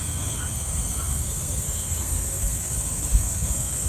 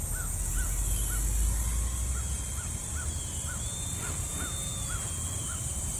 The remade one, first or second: first